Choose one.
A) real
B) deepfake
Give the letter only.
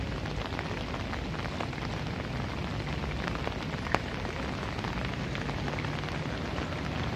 A